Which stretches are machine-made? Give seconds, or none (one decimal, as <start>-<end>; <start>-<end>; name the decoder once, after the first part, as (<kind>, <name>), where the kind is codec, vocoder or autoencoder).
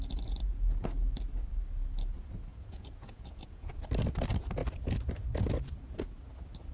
2.5-3.7 (vocoder, Vocos)